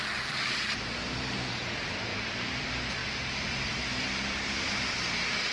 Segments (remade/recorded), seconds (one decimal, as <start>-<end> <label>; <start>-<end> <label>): 0.0-2.1 recorded; 2.1-2.6 remade; 2.6-3.0 recorded; 3.0-3.7 remade; 3.7-5.5 recorded